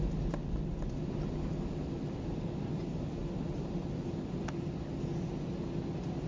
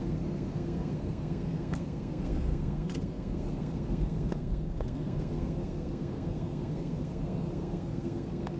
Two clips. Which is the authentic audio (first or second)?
first